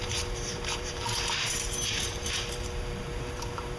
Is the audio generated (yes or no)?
yes